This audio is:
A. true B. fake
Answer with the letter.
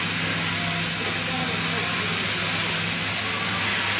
A